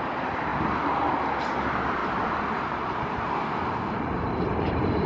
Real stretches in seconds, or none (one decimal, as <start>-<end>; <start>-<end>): 0.0-2.0